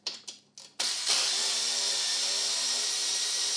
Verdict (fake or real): real